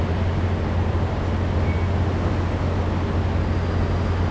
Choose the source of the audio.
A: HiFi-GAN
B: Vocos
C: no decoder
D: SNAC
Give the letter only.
C